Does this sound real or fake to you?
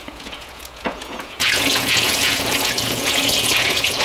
fake